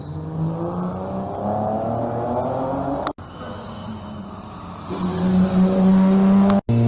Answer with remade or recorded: recorded